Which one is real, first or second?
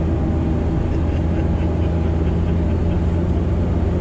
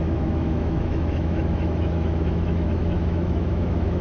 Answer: first